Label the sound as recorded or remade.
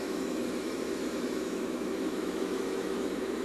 remade